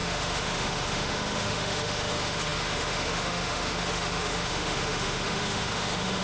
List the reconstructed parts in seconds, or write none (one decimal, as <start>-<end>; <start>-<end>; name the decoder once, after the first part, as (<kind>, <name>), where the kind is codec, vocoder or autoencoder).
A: 0.0-6.2 (autoencoder, DAC-VAE)